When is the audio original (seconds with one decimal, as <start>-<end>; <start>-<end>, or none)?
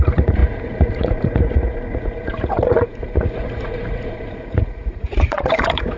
none